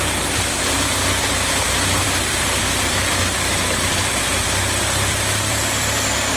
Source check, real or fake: fake